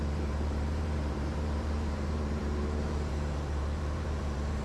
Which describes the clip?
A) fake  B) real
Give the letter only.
A